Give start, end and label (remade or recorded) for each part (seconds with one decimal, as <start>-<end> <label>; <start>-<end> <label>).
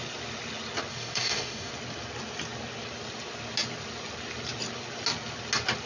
0.0-0.9 recorded; 0.9-1.7 remade; 1.7-5.9 recorded